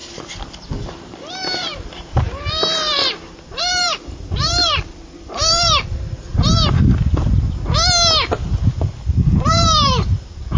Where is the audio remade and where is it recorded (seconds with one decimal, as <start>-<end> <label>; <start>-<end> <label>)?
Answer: 0.0-6.5 remade; 6.5-9.5 recorded; 9.5-10.6 remade